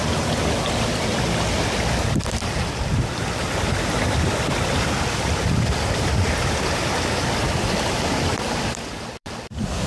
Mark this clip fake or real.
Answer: fake